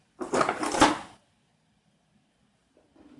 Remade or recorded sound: recorded